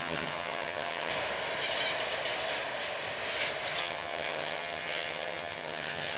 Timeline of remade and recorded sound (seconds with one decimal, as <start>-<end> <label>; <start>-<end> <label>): 0.0-1.1 remade; 1.1-3.8 recorded; 3.8-6.2 remade